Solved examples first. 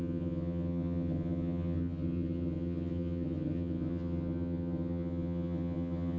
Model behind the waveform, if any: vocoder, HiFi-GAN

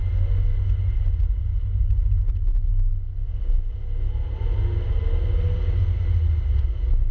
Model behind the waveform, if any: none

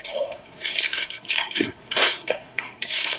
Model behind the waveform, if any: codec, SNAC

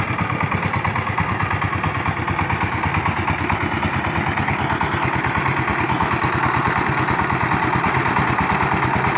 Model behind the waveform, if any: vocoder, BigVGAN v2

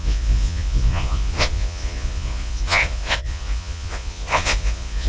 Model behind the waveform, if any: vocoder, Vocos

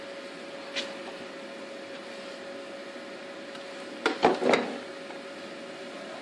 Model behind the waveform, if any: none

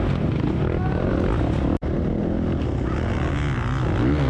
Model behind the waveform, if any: none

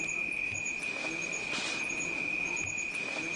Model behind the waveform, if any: none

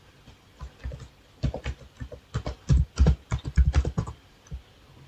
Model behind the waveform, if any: none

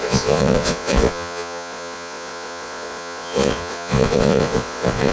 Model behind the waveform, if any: vocoder, Vocos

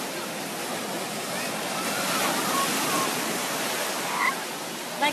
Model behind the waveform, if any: none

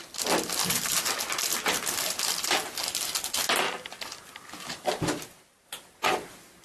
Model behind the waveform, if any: none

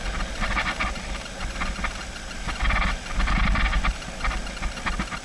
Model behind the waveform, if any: none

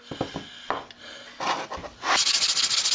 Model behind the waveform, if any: none